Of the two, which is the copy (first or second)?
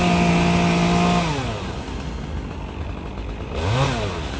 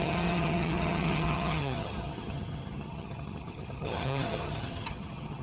second